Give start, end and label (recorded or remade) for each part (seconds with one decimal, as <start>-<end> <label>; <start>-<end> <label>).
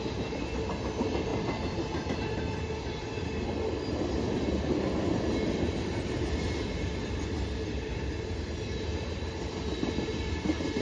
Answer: 0.0-10.8 recorded